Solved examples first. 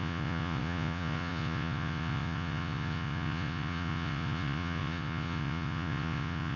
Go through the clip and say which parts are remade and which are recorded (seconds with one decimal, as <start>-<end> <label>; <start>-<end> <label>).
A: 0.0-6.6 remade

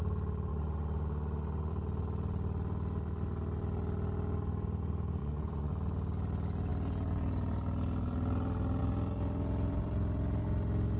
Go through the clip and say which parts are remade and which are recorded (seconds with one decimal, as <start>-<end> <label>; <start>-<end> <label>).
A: 0.0-0.5 recorded; 0.5-1.7 remade; 1.7-5.2 recorded; 5.2-5.7 remade; 5.7-11.0 recorded

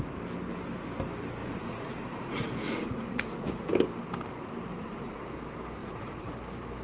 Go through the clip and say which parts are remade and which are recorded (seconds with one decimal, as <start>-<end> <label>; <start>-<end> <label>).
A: 0.0-1.4 recorded; 1.4-3.7 remade; 3.7-4.7 recorded; 4.7-5.2 remade; 5.2-5.8 recorded; 5.8-6.3 remade; 6.3-6.8 recorded

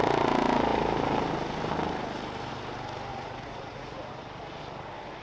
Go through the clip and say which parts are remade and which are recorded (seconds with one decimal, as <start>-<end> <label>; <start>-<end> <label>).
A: 0.0-3.1 recorded; 3.1-4.1 remade; 4.1-5.2 recorded